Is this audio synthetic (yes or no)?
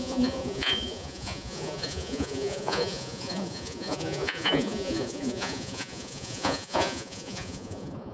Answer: yes